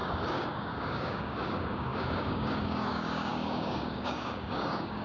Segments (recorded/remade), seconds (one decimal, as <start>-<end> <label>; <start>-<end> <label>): 0.0-5.0 remade